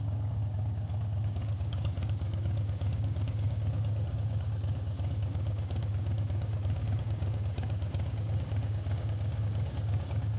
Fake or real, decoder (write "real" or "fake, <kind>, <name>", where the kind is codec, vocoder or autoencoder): fake, codec, DAC